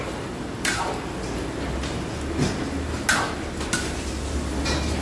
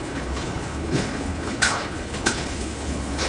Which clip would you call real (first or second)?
first